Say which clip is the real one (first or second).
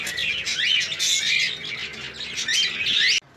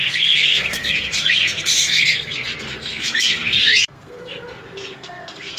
first